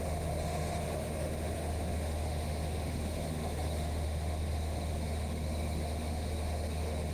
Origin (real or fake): fake